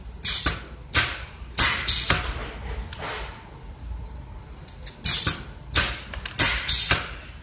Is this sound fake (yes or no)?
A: no